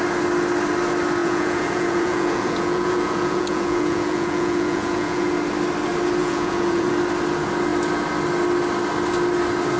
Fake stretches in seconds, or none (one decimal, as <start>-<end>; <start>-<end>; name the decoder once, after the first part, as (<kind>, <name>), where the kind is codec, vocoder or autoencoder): 1.2-5.3 (vocoder, Vocos); 6.2-6.9